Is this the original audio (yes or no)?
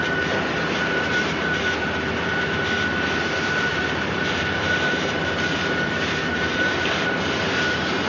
no